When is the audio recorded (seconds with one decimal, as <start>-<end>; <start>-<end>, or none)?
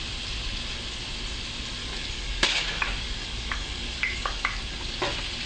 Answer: 0.0-1.8; 4.6-5.5